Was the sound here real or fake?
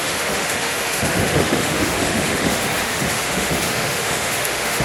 fake